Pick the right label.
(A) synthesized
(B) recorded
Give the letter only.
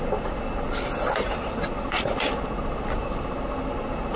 B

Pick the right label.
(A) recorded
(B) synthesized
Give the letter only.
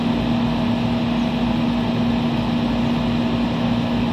A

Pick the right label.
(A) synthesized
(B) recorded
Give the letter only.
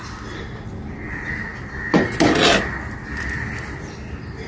B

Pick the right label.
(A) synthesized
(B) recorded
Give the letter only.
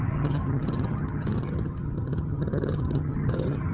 A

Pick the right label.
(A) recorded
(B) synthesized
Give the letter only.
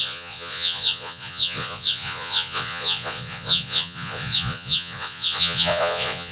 B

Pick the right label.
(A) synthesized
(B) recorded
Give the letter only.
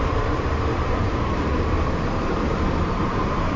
A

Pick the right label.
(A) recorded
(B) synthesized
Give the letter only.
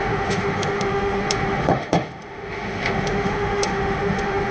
B